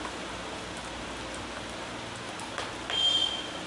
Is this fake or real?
real